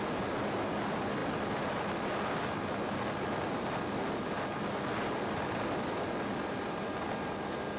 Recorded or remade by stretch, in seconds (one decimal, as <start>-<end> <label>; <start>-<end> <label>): 0.0-7.8 recorded